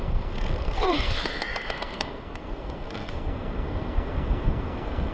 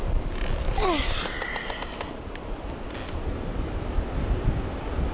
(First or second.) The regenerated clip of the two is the first